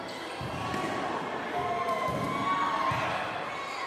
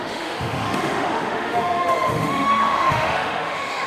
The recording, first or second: first